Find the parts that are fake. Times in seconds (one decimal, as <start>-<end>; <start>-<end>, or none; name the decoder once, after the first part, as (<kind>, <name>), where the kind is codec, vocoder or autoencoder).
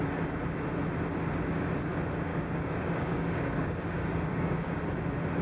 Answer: 2.3-4.7 (codec, DAC)